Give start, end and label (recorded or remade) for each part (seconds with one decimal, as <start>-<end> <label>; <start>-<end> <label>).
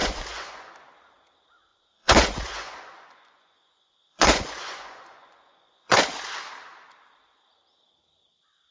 0.0-0.7 remade; 0.7-1.7 recorded; 1.7-6.0 remade; 6.0-8.7 recorded